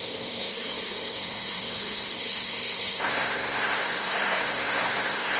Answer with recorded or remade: remade